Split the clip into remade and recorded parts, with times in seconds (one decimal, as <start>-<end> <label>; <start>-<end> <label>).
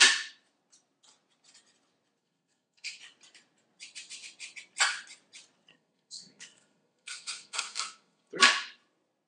0.0-2.2 recorded; 2.2-3.0 remade; 3.0-5.7 recorded; 5.7-8.3 remade; 8.3-9.3 recorded